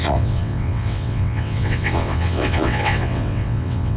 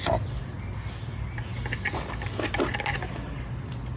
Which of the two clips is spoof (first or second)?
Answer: first